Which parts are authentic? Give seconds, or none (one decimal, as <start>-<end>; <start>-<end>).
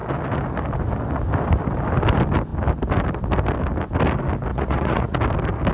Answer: 0.0-4.5; 5.2-5.7